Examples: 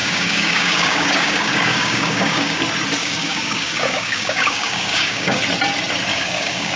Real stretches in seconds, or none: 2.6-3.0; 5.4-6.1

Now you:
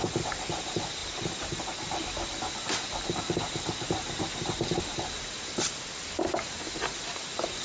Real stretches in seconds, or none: 0.0-7.6

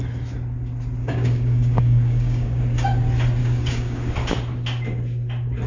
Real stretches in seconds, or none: 0.0-1.0; 2.6-3.4; 4.1-5.7

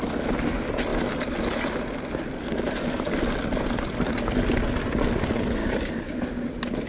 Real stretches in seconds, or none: 0.0-5.6; 6.2-6.9

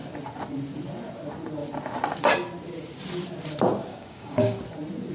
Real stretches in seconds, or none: 0.0-3.9; 4.6-5.1

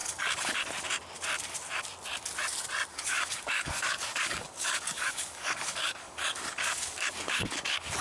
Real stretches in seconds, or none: 0.6-2.9